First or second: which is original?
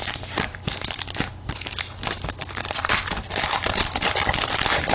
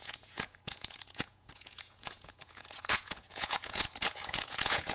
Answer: first